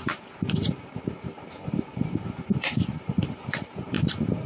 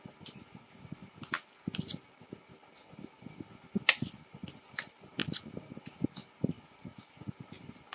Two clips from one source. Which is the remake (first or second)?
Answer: first